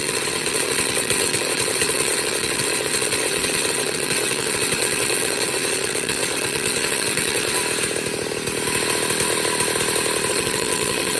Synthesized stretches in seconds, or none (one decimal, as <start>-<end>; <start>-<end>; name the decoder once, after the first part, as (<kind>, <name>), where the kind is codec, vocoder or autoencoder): 0.0-7.6 (vocoder, WaveNeXt); 10.3-11.2